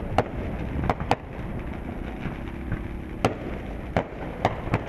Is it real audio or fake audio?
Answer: real